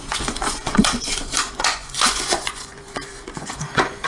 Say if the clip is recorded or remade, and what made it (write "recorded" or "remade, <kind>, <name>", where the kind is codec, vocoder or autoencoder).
remade, vocoder, Vocos